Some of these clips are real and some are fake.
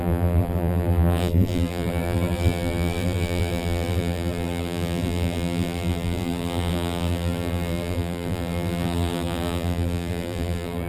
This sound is fake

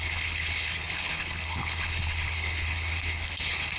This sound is fake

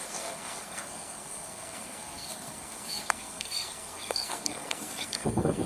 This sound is fake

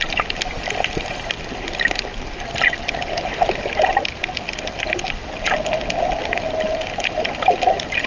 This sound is real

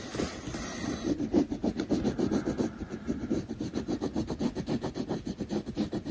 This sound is real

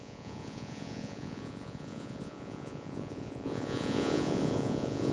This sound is fake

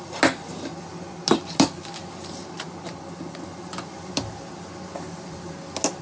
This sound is real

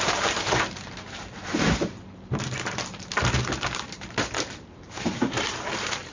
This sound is fake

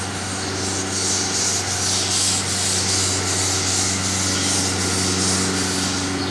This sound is real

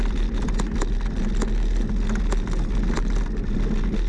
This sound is real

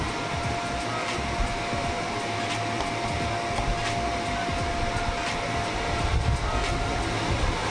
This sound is real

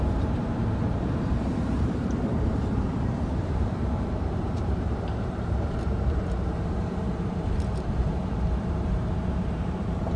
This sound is fake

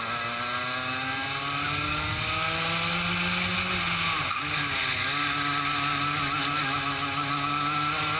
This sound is real